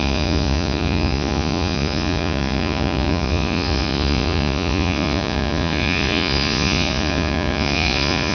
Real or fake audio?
fake